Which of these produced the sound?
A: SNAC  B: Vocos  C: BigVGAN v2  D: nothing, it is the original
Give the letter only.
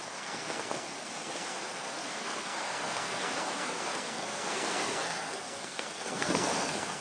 A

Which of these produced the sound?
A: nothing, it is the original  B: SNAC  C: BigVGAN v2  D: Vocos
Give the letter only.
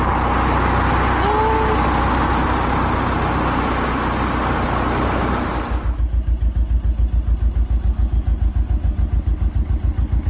A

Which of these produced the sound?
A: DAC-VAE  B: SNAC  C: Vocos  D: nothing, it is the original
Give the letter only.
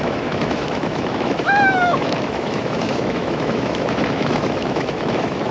A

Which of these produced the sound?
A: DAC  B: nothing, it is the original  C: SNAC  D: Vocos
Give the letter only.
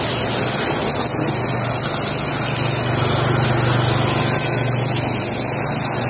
B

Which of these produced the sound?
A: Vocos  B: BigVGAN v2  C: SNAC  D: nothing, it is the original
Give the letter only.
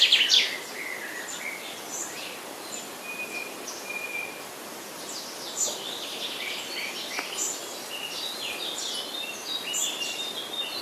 D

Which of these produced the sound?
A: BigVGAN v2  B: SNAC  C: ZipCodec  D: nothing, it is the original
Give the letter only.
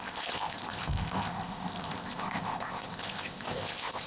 C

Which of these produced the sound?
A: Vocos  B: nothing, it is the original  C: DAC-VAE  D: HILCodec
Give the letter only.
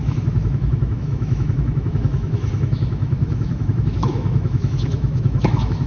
C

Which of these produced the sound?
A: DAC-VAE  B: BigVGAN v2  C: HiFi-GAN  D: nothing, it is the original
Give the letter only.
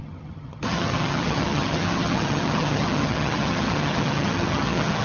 C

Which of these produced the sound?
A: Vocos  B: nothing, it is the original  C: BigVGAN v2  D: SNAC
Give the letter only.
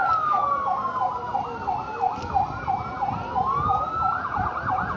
B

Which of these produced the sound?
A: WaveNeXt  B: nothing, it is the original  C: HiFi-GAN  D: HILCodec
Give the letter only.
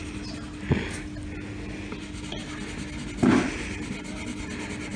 B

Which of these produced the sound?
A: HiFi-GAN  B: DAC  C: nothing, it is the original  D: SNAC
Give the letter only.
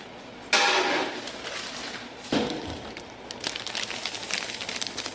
C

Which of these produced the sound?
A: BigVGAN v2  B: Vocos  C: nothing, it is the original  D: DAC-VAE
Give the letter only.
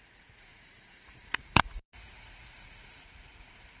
B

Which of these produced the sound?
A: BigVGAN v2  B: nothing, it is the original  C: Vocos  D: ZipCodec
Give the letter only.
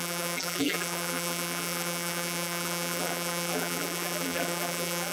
A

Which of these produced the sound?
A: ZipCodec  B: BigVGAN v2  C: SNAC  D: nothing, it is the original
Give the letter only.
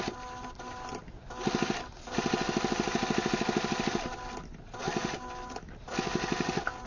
D